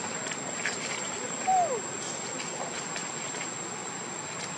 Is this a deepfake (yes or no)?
no